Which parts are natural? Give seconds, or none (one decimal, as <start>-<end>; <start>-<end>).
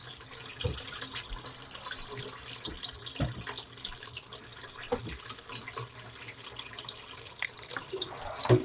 0.0-8.6